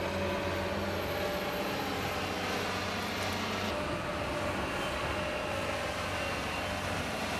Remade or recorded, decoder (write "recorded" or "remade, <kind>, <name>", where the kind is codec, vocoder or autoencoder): recorded